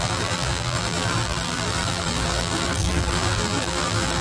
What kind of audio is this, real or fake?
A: fake